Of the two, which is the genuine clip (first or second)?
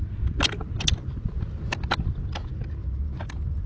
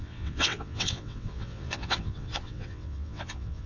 first